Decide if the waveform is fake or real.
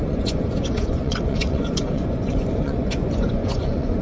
fake